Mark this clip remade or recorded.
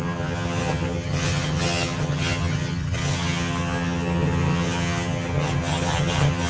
remade